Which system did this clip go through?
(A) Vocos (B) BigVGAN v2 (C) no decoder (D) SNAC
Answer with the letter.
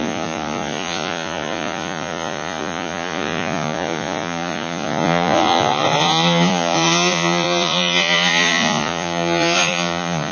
A